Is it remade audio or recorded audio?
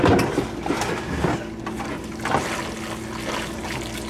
recorded